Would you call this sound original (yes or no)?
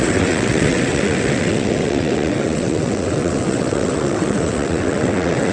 no